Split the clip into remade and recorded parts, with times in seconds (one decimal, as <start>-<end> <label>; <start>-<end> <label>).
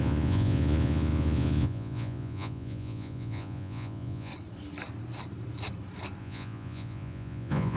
0.0-4.3 remade; 4.3-6.2 recorded; 6.2-7.8 remade